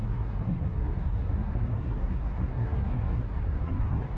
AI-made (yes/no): yes